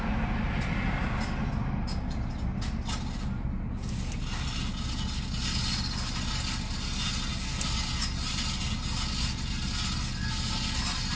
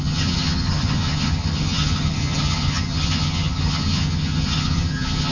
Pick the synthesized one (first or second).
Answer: second